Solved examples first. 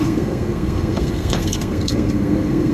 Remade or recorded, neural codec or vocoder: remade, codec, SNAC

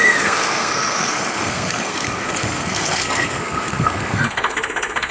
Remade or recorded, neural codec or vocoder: remade, codec, SNAC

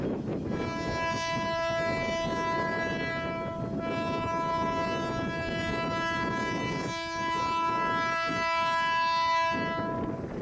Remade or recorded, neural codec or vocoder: recorded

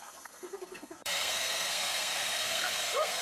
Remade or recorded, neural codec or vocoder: remade, codec, SNAC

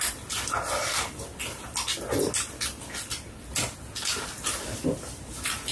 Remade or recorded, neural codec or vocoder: recorded